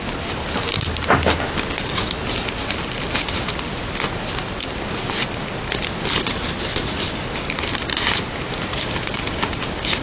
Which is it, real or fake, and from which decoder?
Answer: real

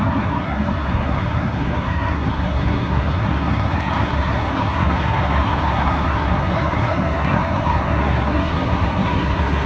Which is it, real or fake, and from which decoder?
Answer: fake, codec, SNAC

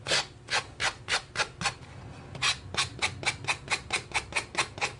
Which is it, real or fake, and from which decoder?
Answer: real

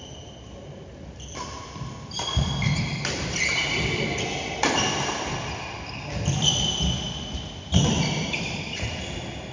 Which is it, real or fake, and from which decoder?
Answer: real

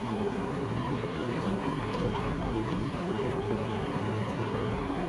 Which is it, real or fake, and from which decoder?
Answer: fake, codec, SNAC